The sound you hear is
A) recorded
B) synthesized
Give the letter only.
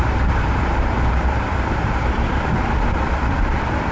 B